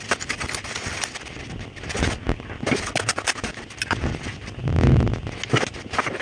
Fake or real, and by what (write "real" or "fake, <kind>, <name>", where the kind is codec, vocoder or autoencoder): real